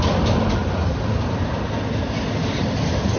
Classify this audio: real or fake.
real